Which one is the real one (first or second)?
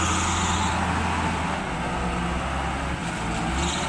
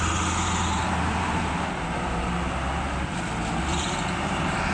first